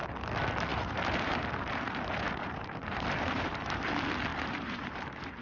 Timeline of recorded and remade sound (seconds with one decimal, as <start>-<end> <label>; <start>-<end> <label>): 0.0-0.7 recorded; 0.7-3.9 remade; 3.9-4.3 recorded; 4.3-5.4 remade